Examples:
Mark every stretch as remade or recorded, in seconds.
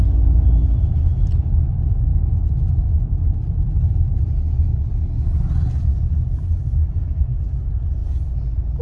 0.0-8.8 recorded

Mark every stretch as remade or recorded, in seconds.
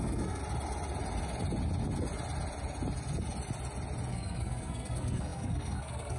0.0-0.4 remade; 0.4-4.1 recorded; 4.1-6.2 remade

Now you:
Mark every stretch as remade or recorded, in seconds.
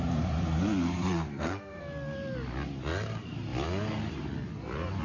0.0-1.3 recorded; 1.3-1.8 remade; 1.8-5.0 recorded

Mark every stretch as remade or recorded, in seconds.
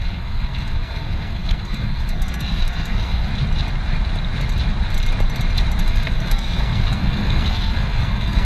0.0-3.3 remade; 3.3-5.8 recorded; 5.8-8.4 remade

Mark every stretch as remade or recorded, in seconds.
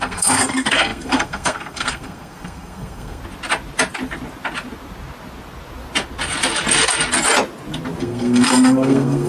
0.0-3.2 remade; 3.2-8.0 recorded; 8.0-9.3 remade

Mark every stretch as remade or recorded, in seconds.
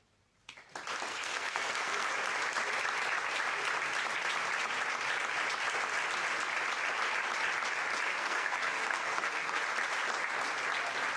0.0-1.1 recorded; 1.1-2.1 remade; 2.1-8.1 recorded; 8.1-9.6 remade; 9.6-11.2 recorded